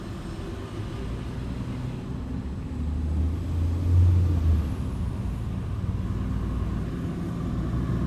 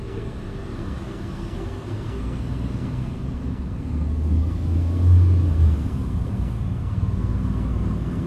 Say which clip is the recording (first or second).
first